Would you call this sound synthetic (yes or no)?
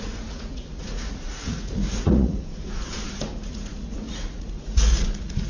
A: yes